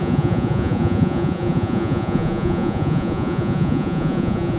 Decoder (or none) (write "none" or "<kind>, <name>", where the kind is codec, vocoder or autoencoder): vocoder, Vocos